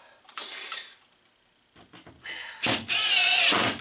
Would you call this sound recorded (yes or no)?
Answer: yes